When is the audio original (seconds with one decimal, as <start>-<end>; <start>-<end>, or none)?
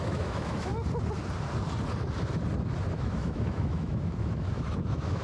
0.7-2.9